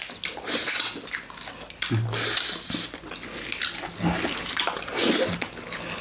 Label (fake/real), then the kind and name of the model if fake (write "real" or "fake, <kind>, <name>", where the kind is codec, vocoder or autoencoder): real